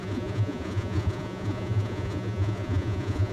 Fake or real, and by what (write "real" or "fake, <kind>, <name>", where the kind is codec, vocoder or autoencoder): fake, vocoder, Vocos